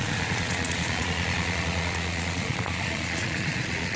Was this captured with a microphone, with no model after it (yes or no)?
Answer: no